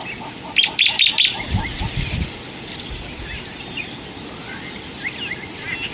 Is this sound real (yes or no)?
yes